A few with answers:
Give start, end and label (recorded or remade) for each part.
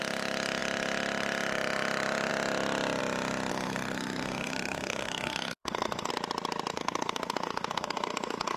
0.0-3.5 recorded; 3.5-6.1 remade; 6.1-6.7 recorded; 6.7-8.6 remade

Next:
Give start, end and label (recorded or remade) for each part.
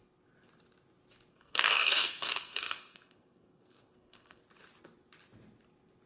0.0-1.3 recorded; 1.3-4.4 remade; 4.4-6.1 recorded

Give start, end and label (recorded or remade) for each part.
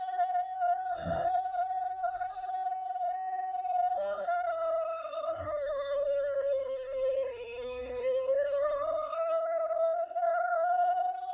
0.0-11.3 remade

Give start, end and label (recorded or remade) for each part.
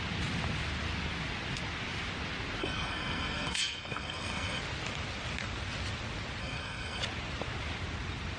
0.0-2.6 recorded; 2.6-4.6 remade; 4.6-6.4 recorded; 6.4-7.0 remade; 7.0-8.4 recorded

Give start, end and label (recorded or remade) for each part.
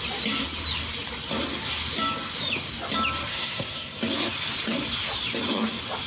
0.0-3.3 recorded; 3.3-4.0 remade; 4.0-6.1 recorded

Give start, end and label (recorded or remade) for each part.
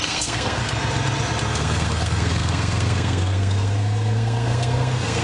0.0-0.6 remade; 0.6-1.5 recorded; 1.5-5.2 remade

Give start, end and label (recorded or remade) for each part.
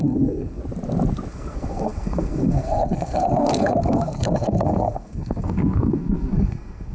0.0-0.6 remade; 0.6-1.3 recorded; 1.3-6.9 remade